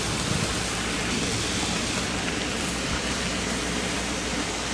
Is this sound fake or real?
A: fake